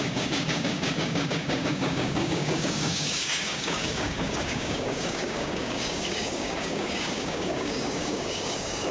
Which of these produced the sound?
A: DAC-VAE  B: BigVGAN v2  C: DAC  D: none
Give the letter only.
C